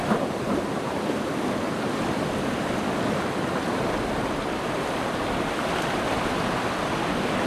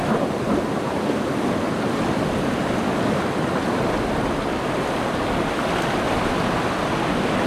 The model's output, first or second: first